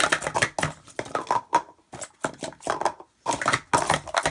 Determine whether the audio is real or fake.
real